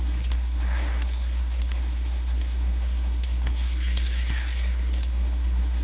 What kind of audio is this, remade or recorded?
remade